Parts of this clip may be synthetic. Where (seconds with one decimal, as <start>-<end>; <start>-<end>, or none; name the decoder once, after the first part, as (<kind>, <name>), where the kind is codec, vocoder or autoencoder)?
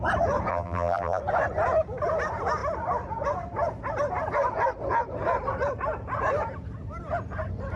0.5-1.2 (vocoder, BigVGAN v2)